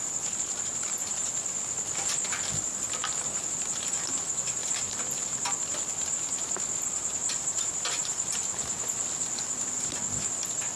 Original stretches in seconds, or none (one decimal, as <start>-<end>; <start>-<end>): 0.0-7.1; 8.4-10.8

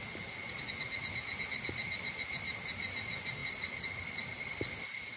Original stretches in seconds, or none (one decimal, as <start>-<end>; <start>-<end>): 0.0-3.4; 4.7-5.2